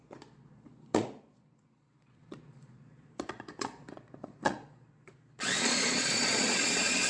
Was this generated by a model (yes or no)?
yes